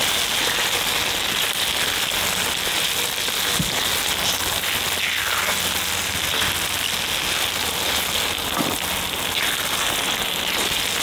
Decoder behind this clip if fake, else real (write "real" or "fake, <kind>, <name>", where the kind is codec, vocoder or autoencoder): real